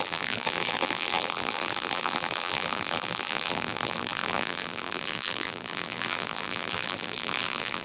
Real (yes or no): no